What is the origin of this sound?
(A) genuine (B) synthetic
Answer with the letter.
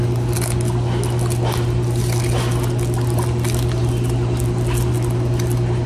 A